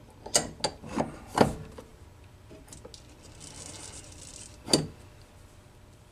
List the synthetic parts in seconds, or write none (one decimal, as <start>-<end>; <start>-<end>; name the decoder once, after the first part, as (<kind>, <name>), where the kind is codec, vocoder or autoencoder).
none